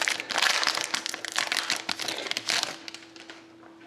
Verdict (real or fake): real